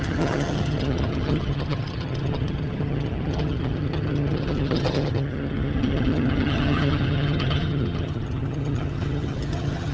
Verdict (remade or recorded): remade